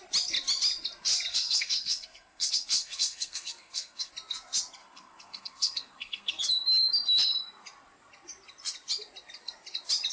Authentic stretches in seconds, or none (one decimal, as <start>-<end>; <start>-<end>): 0.0-1.3; 4.1-4.8; 6.4-10.1